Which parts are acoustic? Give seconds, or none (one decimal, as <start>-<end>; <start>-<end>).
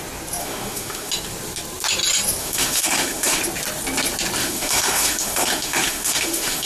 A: 0.0-0.4; 1.1-2.4; 3.4-4.4